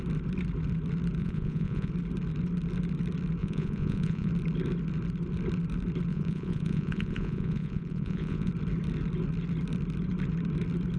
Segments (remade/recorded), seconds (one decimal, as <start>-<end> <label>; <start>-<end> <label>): 0.0-1.2 recorded; 1.2-1.9 remade; 1.9-3.4 recorded; 3.4-4.3 remade; 4.3-6.1 recorded; 6.1-8.5 remade; 8.5-11.0 recorded